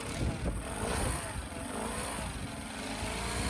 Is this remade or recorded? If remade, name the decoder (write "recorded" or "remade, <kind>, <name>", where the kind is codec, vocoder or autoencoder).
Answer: recorded